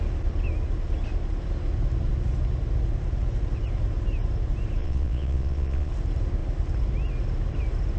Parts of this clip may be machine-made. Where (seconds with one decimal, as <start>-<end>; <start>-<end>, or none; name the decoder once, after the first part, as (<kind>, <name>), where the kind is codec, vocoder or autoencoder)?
4.8-5.9 (vocoder, Vocos)